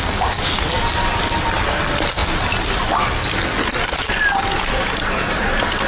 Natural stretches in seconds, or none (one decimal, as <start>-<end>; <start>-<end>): 0.0-5.9